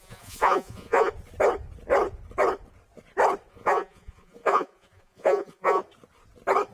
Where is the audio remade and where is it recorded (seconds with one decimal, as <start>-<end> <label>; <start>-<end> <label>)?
0.0-1.1 remade; 1.1-3.5 recorded; 3.5-5.8 remade; 5.8-6.7 recorded